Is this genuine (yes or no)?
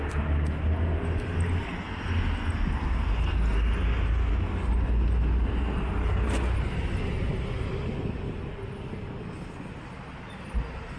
yes